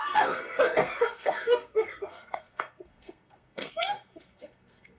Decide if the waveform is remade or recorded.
remade